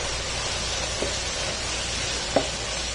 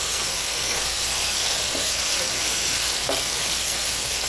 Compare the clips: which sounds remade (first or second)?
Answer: second